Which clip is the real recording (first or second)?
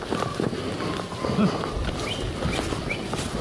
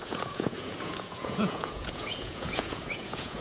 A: first